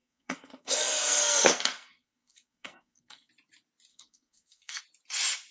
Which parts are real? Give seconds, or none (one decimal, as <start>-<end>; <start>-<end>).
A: 3.3-3.9; 4.8-5.5